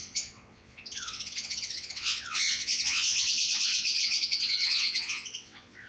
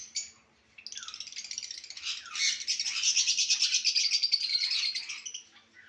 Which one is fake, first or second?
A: first